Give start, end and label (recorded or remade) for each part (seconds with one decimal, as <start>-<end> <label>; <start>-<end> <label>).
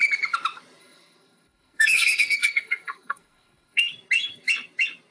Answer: 0.0-0.8 recorded; 0.8-3.9 remade; 3.9-5.1 recorded